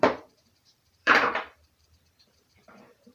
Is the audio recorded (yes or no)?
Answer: no